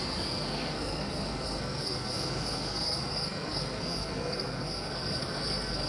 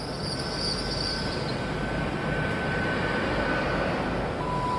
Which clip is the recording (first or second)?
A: second